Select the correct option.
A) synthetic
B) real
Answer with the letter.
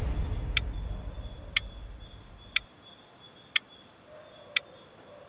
B